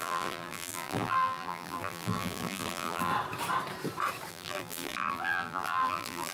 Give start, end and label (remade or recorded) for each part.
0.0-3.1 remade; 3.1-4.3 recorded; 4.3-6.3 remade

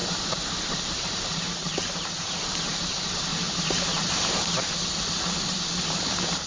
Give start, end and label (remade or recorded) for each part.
0.0-2.8 remade; 2.8-3.3 recorded; 3.3-4.4 remade; 4.4-6.5 recorded

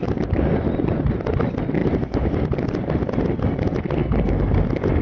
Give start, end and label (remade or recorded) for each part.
0.0-1.8 recorded; 1.8-2.4 remade; 2.4-5.0 recorded

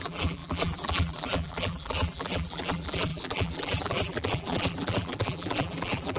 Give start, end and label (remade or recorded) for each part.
0.0-6.2 remade

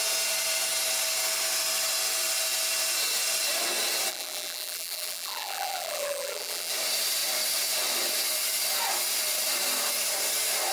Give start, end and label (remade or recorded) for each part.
0.0-4.1 recorded; 4.1-6.7 remade; 6.7-10.7 recorded

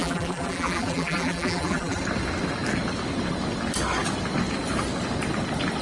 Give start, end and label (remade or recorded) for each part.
0.0-2.0 remade; 2.0-5.8 recorded